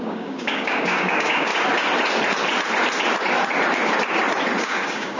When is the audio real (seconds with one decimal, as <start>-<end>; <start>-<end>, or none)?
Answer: 1.5-4.6